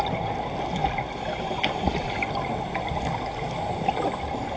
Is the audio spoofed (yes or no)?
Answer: no